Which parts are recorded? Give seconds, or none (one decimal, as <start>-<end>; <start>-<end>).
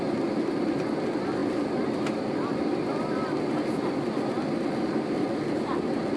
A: 0.0-6.2